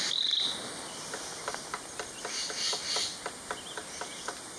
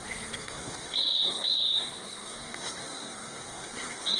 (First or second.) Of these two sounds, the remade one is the second